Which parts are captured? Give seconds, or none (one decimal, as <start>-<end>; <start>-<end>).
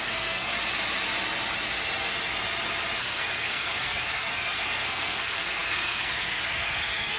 0.5-3.0